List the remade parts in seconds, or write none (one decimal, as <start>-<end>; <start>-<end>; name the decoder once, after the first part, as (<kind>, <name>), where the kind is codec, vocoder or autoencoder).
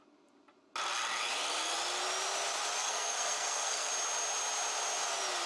2.8-3.9 (codec, SNAC)